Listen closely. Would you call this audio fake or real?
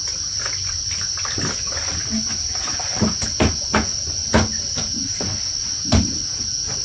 real